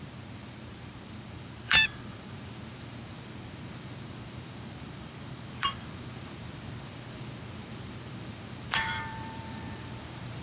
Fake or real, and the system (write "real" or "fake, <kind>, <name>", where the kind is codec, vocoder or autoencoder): fake, vocoder, BigVGAN v2